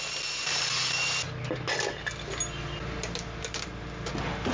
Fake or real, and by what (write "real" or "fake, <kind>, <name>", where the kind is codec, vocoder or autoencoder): real